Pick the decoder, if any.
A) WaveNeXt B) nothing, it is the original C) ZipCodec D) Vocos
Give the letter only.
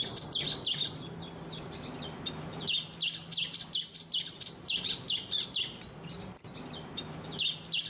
B